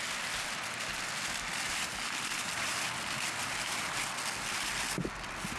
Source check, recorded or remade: recorded